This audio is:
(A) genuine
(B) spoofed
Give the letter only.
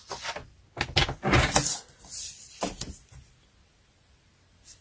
A